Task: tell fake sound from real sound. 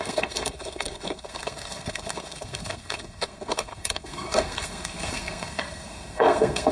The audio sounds fake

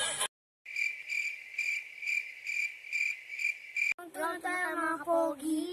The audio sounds real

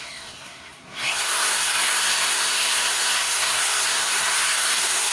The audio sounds fake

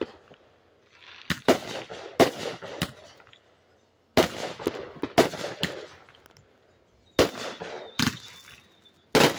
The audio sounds real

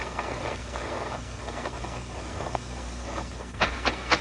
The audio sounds fake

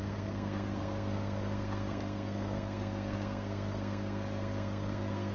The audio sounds fake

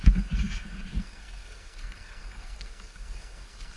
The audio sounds fake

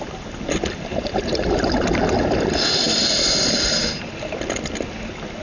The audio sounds real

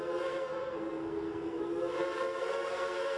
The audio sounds fake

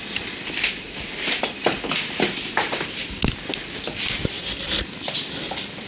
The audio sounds real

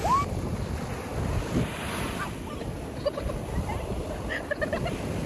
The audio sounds real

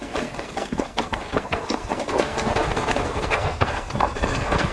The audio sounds fake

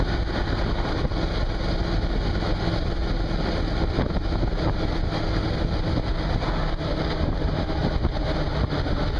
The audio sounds real